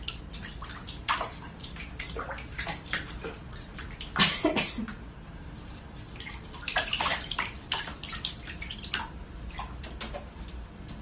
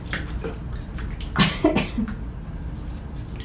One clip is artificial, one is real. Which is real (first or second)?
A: second